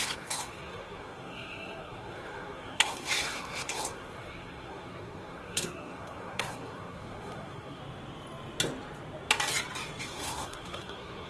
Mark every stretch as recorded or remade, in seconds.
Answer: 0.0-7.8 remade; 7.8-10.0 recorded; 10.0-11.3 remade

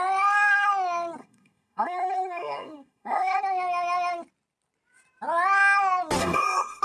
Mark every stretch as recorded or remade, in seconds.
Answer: 0.0-1.2 recorded; 1.2-3.4 remade; 3.4-6.2 recorded; 6.2-6.8 remade

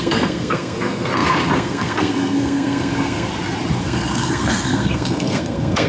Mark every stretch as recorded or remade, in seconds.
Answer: 0.0-3.3 remade; 3.3-3.8 recorded; 3.8-5.9 remade

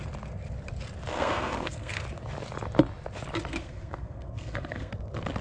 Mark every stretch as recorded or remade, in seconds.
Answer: 0.0-1.1 recorded; 1.1-1.9 remade; 1.9-3.5 recorded; 3.5-4.9 remade; 4.9-5.4 recorded

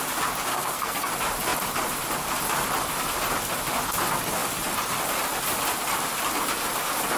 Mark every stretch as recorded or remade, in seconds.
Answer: 0.0-0.5 recorded; 0.5-1.1 remade; 1.1-7.2 recorded